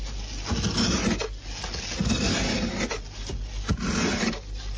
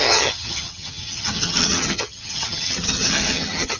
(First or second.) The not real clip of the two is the second